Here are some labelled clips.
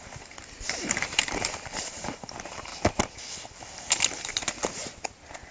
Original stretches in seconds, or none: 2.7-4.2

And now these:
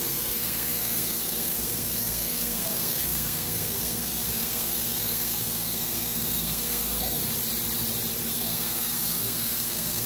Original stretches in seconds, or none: 7.2-8.3

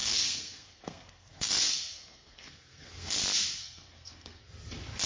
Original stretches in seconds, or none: 3.1-3.5; 4.4-5.1

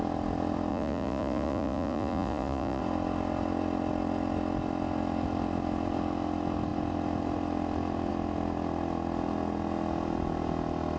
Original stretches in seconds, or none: 0.0-0.7; 2.8-11.0

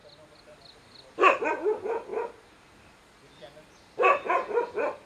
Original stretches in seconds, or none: 0.0-5.1

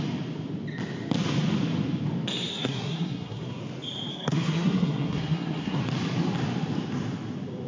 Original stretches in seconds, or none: 0.0-2.5; 3.6-4.1; 5.8-7.7

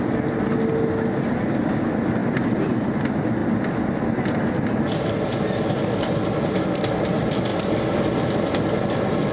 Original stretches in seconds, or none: 0.0-2.2; 2.8-9.3